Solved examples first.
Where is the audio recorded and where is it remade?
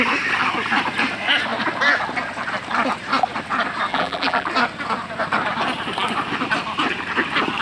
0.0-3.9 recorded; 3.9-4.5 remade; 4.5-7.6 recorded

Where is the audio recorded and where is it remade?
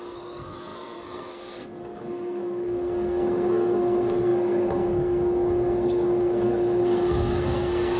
0.0-8.0 remade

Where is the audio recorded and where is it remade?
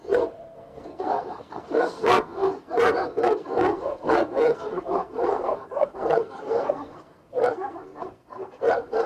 0.0-9.1 remade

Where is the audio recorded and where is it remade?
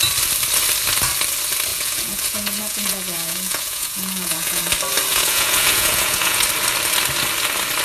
0.0-1.7 recorded; 1.7-4.6 remade; 4.6-5.1 recorded; 5.1-6.4 remade; 6.4-7.8 recorded